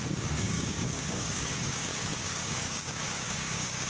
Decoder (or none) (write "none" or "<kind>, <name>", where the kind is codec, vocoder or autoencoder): codec, DAC